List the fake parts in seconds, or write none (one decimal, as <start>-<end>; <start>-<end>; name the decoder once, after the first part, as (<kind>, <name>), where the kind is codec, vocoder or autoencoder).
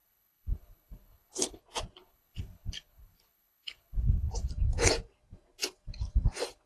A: 0.0-1.6 (codec, HILCodec); 2.0-4.5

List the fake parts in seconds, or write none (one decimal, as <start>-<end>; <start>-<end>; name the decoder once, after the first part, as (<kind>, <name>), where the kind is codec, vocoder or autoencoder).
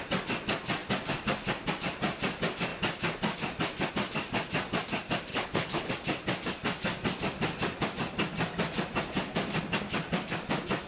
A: 5.3-5.9 (codec, HILCodec)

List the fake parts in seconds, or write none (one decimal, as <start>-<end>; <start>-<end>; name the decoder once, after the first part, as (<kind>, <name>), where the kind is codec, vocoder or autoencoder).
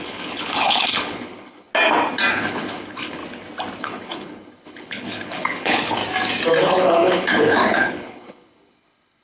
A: 0.0-1.7 (codec, HILCodec); 2.3-3.2; 3.8-6.0; 6.6-9.2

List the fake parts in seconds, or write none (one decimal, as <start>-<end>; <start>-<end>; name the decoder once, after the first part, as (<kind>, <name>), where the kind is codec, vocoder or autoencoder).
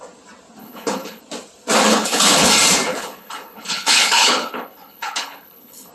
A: 0.6-1.2 (codec, HILCodec); 1.9-2.5; 2.9-5.9